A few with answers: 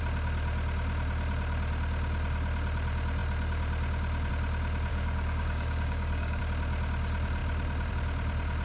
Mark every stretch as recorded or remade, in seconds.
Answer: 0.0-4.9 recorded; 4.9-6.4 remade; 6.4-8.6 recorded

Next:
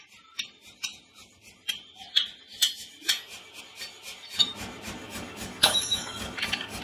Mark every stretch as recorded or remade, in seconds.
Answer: 0.0-5.0 recorded; 5.0-6.8 remade

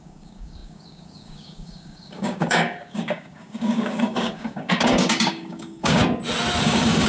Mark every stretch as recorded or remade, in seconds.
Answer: 0.0-6.0 remade; 6.0-6.6 recorded; 6.6-7.1 remade

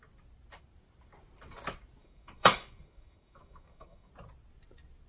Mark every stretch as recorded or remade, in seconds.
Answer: 0.0-2.0 recorded; 2.0-4.1 remade; 4.1-5.1 recorded

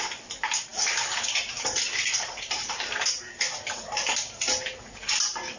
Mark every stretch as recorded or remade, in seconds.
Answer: 0.0-5.6 recorded

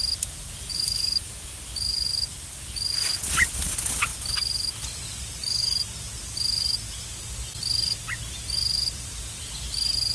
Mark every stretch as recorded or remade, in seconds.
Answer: 0.0-0.7 recorded; 0.7-1.6 remade; 1.6-10.1 recorded